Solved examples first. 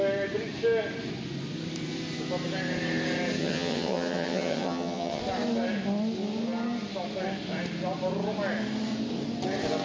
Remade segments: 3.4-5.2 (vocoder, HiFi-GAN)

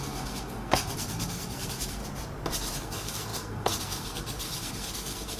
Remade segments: 0.0-2.0 (codec, SNAC); 2.8-5.4

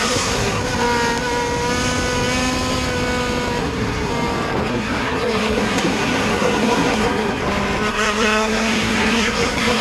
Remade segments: 0.0-0.6 (codec, SNAC); 3.6-4.1; 4.7-7.4; 7.9-9.8

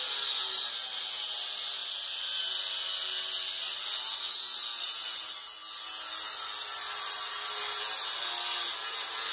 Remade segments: none

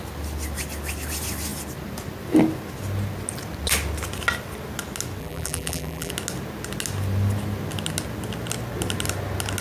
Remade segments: 5.2-6.1 (vocoder, BigVGAN v2)

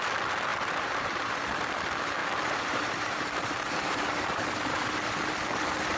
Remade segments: 0.5-1.7 (vocoder, BigVGAN v2); 2.2-4.4

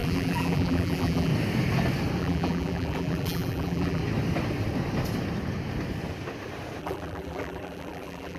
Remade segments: 0.0-1.3 (vocoder, BigVGAN v2); 2.2-4.0; 6.8-8.4